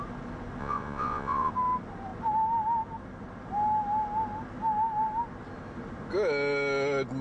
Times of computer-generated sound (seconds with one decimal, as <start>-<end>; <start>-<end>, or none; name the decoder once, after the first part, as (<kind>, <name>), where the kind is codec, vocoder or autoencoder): 0.6-1.5 (vocoder, Vocos)